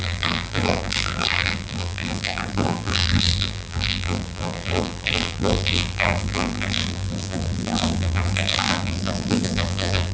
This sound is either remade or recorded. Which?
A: remade